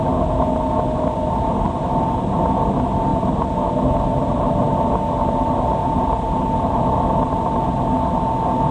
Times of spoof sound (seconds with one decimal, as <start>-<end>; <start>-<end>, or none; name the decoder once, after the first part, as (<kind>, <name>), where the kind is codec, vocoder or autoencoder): none